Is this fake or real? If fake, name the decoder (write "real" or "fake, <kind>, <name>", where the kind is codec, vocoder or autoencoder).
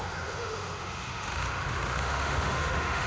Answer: fake, autoencoder, DAC-VAE